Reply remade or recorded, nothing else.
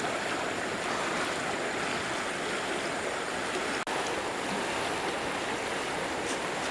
recorded